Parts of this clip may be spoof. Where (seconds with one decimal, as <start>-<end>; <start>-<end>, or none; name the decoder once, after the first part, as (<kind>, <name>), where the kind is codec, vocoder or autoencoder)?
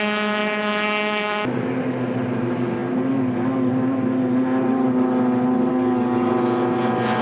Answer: 5.7-6.3 (codec, DAC)